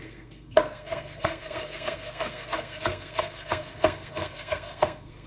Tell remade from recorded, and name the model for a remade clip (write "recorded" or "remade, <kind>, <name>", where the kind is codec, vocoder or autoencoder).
remade, codec, SNAC